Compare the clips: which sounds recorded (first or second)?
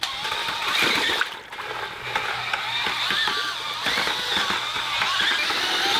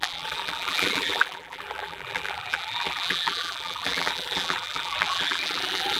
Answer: first